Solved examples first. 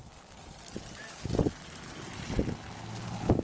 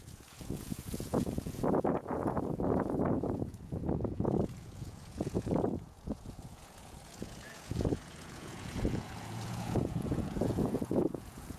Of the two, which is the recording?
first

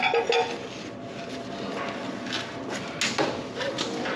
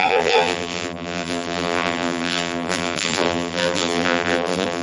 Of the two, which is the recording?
first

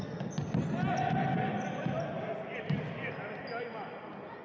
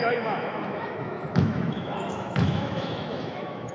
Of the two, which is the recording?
first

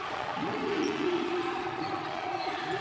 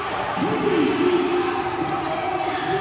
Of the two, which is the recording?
second